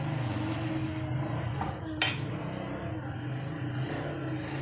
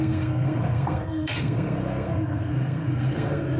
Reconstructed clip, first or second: second